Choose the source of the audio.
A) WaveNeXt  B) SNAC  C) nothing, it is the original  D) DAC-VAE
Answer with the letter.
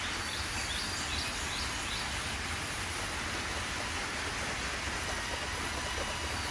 C